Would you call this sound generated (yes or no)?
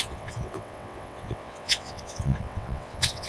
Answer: yes